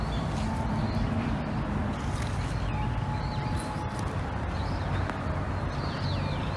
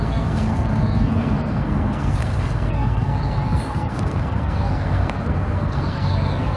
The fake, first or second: second